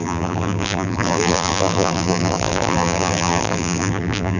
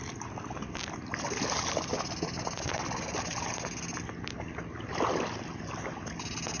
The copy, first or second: first